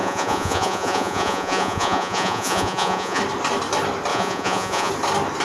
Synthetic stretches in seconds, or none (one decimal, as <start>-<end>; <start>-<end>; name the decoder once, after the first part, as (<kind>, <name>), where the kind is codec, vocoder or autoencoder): 0.0-3.2 (vocoder, Vocos); 4.1-4.9